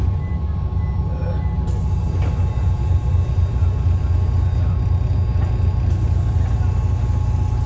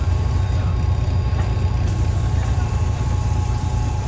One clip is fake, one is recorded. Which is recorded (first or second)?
first